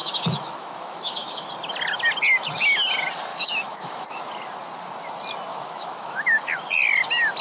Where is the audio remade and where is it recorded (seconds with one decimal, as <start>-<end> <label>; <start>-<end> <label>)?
0.0-1.5 remade; 1.5-3.3 recorded; 3.3-4.2 remade; 4.2-5.5 recorded; 5.5-6.6 remade; 6.6-7.4 recorded